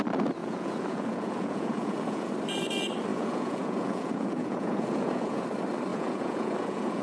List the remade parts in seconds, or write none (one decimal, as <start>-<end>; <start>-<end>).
0.4-2.3; 3.1-5.4; 5.9-7.0